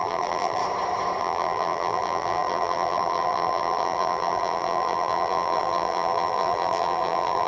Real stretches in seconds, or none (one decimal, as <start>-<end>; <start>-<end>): 0.6-1.2